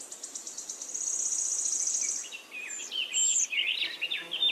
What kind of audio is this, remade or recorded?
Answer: recorded